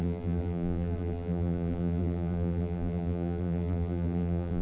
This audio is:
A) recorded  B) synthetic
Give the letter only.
B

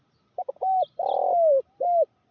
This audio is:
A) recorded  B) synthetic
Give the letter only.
A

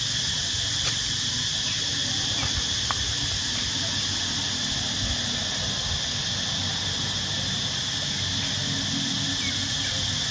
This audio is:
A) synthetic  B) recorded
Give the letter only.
B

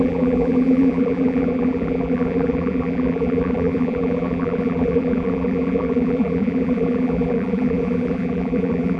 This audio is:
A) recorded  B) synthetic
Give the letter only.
B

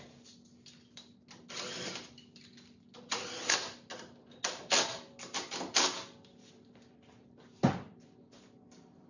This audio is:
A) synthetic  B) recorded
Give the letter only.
B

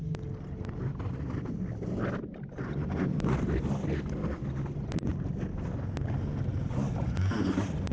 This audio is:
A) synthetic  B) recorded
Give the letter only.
B